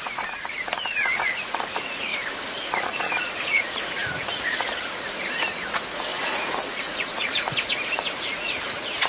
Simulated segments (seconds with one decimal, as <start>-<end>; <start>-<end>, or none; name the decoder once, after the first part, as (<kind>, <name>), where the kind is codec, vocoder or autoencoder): 0.0-2.1 (vocoder, Vocos); 2.6-9.1